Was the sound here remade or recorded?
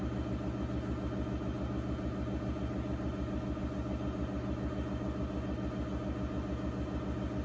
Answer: recorded